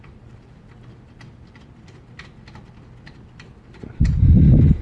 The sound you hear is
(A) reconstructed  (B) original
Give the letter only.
A